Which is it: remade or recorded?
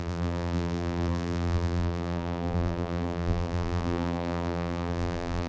remade